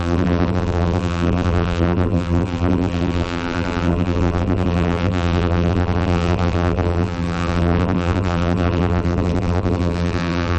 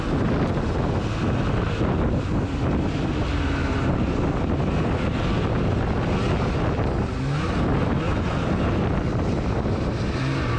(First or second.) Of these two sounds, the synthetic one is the first